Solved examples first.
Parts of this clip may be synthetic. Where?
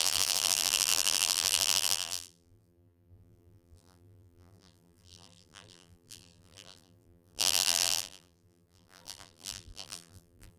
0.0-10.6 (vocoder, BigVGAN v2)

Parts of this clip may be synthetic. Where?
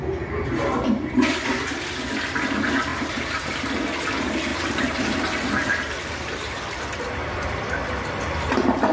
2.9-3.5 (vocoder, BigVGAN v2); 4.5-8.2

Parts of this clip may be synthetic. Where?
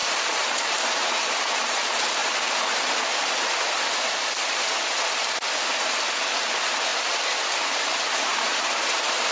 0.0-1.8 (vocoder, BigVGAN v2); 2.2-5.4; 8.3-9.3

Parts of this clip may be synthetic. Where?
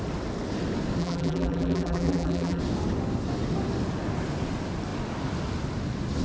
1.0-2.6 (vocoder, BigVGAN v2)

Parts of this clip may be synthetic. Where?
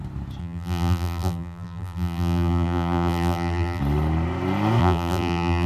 0.4-3.8 (vocoder, BigVGAN v2); 4.8-5.7